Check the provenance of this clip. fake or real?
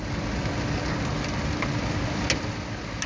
real